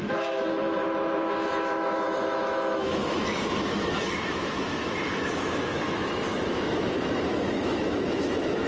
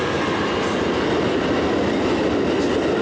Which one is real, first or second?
second